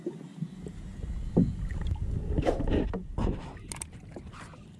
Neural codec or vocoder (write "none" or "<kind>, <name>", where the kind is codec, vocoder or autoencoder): none